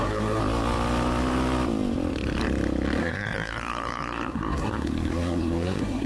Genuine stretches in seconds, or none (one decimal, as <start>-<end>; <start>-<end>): 0.4-3.0